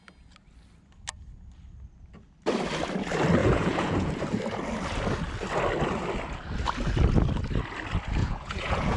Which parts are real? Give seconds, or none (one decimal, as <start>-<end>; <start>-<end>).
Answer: 0.0-3.4; 4.1-8.2